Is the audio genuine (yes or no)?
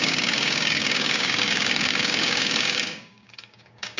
no